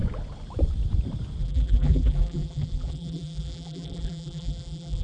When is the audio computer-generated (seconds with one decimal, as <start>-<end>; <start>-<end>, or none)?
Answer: 1.4-5.0